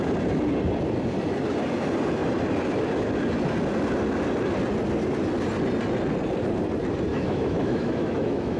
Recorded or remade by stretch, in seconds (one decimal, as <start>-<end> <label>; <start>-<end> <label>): 0.0-7.1 recorded; 7.1-8.6 remade